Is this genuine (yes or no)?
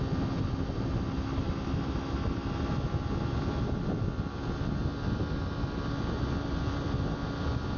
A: yes